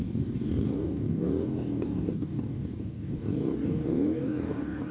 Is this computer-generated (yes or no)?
yes